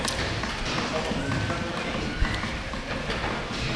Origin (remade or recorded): recorded